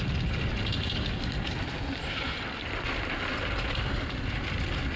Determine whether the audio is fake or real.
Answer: real